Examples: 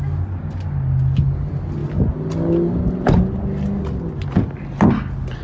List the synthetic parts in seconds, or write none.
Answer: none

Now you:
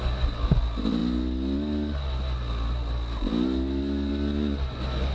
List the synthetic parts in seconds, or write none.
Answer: none